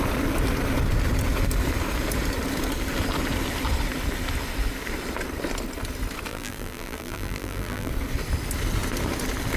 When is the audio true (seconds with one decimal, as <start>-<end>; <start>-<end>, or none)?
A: 0.0-6.3; 7.9-9.6